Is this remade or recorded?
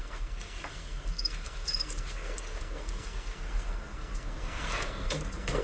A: remade